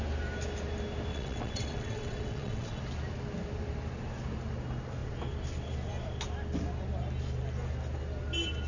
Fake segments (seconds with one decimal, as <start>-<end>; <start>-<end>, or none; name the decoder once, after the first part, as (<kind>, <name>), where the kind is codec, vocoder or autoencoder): 1.1-2.8 (vocoder, WaveNeXt)